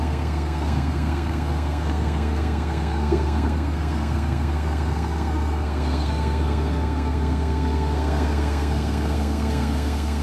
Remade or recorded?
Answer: remade